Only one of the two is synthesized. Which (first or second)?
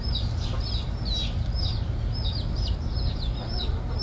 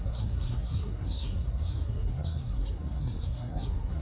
second